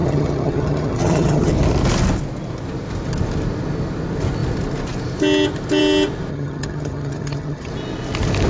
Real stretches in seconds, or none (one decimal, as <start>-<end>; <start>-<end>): 1.5-6.3; 7.7-8.5